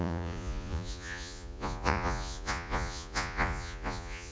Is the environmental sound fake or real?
fake